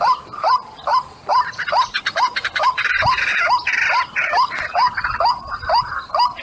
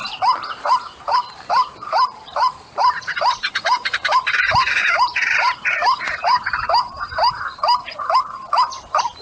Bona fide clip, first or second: first